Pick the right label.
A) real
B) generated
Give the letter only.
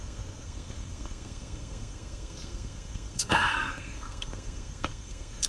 B